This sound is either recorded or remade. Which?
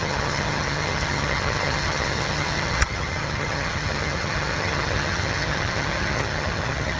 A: remade